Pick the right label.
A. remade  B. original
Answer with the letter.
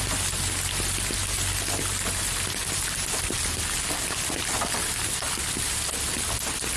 B